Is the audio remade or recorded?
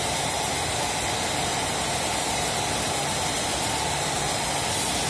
recorded